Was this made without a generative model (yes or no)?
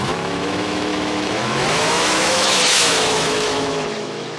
no